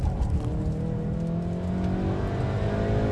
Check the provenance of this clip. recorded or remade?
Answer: recorded